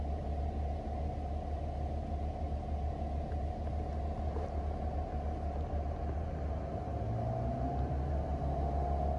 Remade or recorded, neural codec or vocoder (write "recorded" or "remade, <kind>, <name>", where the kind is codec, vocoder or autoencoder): recorded